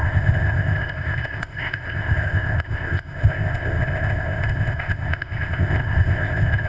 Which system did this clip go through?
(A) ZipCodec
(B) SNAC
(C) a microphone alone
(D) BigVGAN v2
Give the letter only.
A